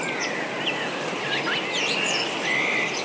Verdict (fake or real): real